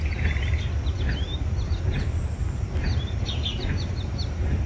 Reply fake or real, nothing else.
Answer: real